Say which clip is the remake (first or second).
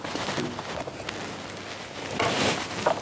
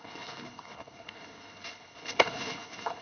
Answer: second